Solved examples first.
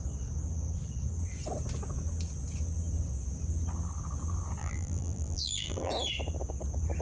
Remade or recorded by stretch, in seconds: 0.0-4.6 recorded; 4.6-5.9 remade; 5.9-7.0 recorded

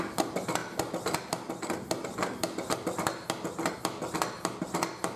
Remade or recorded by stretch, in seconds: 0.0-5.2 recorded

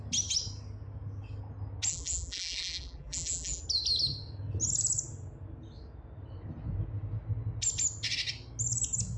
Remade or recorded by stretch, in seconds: 0.0-1.9 recorded; 1.9-3.6 remade; 3.6-9.2 recorded

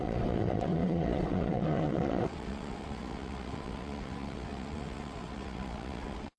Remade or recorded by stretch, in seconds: 0.0-6.4 remade

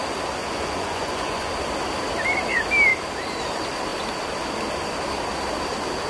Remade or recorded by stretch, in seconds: 0.0-0.4 recorded; 0.4-1.5 remade; 1.5-6.1 recorded

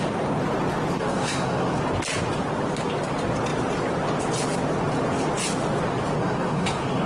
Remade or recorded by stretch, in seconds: 0.0-0.9 recorded; 0.9-1.8 remade; 1.8-6.2 recorded; 6.2-7.1 remade

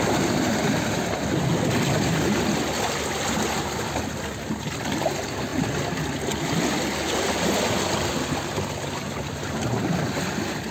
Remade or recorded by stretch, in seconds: 0.0-10.7 recorded

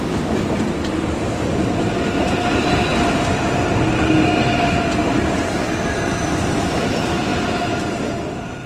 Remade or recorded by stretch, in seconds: 0.0-8.7 recorded